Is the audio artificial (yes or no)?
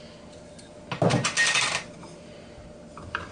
no